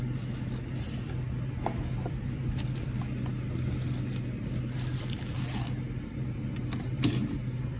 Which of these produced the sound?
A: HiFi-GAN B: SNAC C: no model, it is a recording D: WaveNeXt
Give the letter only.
C